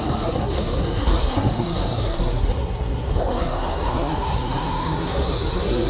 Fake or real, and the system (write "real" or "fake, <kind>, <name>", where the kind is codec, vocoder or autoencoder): fake, codec, SNAC